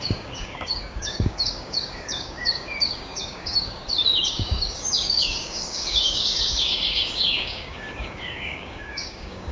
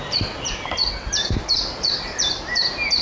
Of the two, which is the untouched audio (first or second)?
second